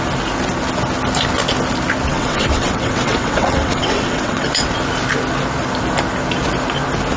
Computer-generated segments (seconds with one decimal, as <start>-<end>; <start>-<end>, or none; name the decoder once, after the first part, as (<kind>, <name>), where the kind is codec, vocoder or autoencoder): 2.1-4.7 (vocoder, WaveNeXt)

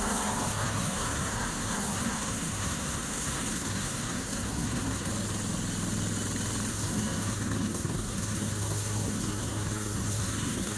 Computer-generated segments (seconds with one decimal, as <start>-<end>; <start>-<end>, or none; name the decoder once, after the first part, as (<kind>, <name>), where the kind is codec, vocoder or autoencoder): 0.0-5.1 (codec, SNAC); 6.7-10.8

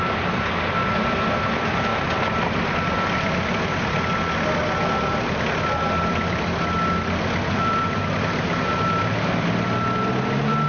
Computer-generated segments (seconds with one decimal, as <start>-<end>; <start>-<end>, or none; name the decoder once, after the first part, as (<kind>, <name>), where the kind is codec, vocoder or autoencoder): none

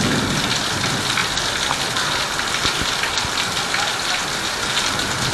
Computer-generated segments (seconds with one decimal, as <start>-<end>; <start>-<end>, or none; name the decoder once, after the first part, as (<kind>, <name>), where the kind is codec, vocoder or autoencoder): none

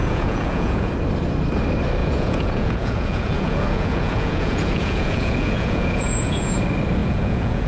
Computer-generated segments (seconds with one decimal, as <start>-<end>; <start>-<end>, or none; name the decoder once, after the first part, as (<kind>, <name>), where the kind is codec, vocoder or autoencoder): 0.0-0.9 (vocoder, Vocos); 2.0-6.6; 7.0-7.7